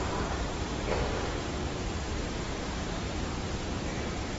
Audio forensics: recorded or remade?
remade